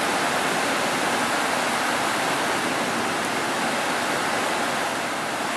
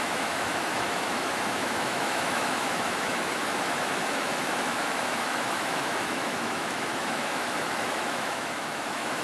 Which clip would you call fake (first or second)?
second